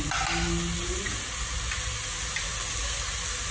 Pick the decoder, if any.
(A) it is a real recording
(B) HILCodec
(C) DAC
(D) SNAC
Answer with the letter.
A